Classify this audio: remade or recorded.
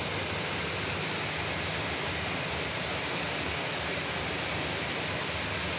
recorded